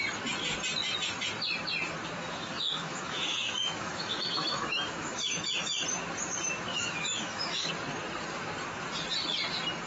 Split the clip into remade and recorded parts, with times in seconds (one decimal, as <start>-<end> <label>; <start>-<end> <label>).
0.0-2.2 recorded; 2.2-5.7 remade; 5.7-6.7 recorded; 6.7-7.7 remade; 7.7-9.9 recorded